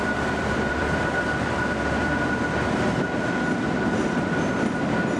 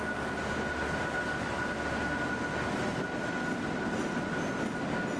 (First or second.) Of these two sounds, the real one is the second